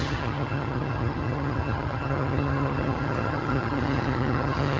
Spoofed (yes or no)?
yes